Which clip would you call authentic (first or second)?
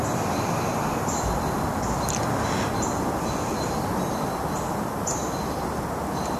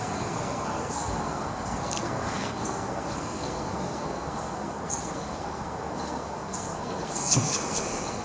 first